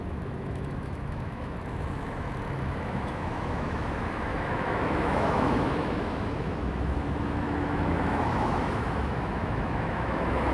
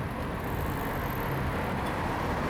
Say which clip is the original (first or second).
second